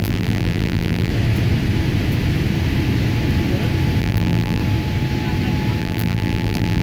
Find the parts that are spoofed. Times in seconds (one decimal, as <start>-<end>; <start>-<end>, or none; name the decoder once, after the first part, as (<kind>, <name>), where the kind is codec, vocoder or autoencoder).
0.0-1.1 (vocoder, BigVGAN v2); 4.0-4.6; 5.8-6.8